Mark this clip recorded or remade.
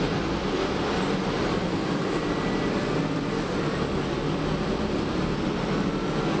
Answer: recorded